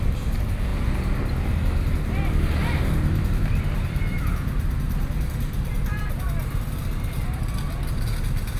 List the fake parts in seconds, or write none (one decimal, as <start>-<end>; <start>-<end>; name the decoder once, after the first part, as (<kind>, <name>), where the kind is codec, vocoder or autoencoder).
none